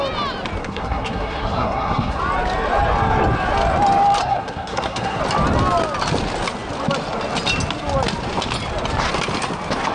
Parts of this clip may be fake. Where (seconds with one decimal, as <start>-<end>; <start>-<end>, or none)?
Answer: 0.6-2.2; 4.2-5.2